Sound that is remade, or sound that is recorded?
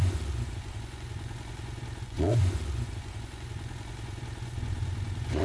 remade